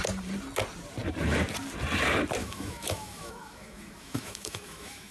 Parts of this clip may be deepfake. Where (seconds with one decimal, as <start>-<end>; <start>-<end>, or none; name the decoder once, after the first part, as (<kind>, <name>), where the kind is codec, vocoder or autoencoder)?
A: 2.4-5.1 (autoencoder, DAC-VAE)